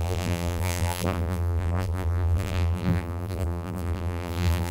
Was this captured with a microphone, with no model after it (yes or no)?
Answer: no